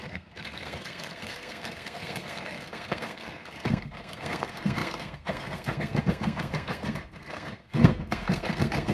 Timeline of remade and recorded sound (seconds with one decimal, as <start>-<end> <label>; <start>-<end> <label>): 0.0-8.9 remade